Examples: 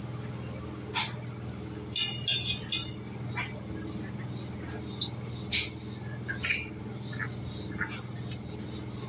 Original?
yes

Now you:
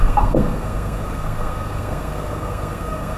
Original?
no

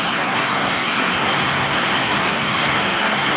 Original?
no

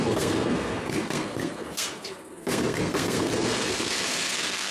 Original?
no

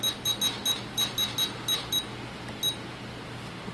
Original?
yes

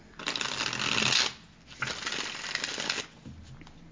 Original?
yes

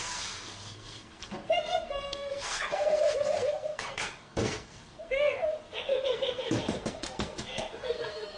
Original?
no